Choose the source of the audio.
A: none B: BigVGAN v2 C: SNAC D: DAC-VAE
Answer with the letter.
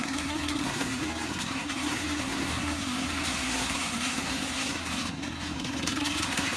C